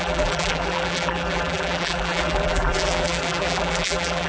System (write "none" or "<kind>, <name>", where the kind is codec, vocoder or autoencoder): vocoder, BigVGAN v2